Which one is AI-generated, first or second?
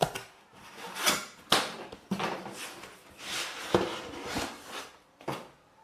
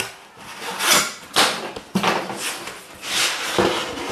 first